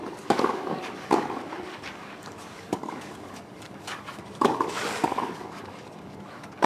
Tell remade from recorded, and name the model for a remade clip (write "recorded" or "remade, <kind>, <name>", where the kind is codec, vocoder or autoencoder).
remade, codec, DAC